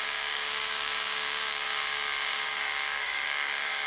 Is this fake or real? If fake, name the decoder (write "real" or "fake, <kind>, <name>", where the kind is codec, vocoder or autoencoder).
fake, codec, DAC